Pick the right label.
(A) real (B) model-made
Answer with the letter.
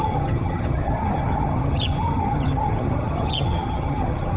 B